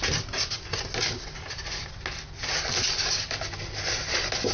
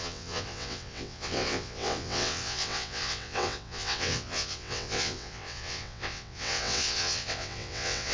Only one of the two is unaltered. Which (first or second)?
first